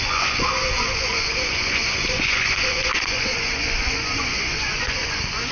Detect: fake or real fake